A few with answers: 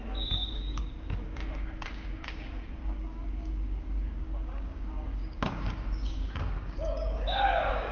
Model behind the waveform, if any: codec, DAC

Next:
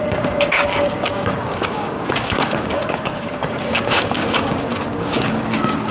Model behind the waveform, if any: codec, DAC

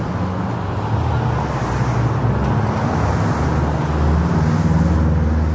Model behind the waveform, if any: none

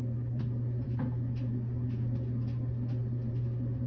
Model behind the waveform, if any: none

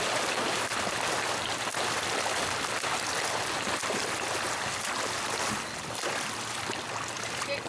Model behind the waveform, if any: none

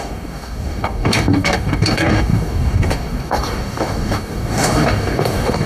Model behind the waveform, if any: codec, DAC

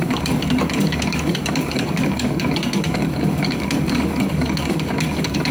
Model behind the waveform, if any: codec, DAC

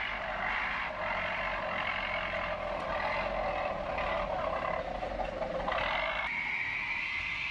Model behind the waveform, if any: none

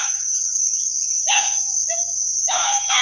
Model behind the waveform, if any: codec, DAC